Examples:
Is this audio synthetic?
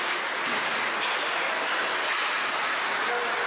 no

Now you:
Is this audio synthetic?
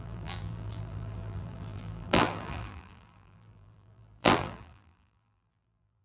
yes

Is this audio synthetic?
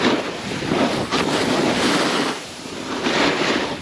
yes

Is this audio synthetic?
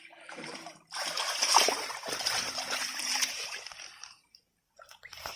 yes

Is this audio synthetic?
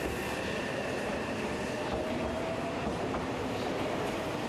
yes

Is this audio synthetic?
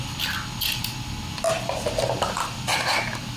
no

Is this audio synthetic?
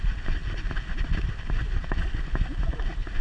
no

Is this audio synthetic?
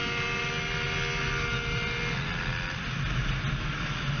no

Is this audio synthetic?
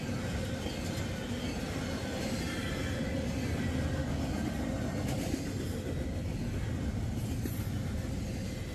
no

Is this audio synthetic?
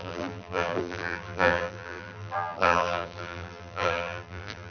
yes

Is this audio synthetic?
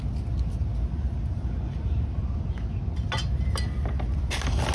no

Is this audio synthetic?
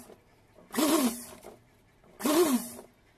no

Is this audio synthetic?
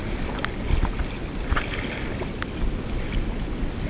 no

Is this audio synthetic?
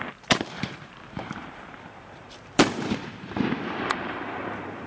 yes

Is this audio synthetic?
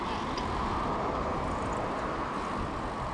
no